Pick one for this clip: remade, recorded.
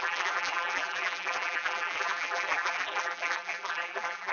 remade